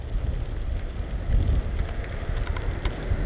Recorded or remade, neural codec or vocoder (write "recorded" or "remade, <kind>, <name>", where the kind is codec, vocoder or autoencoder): recorded